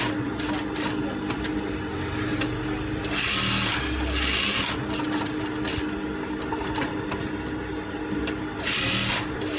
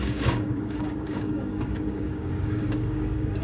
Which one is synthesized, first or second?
second